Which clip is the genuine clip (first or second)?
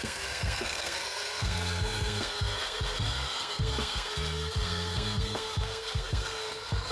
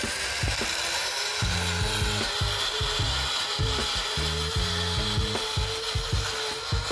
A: second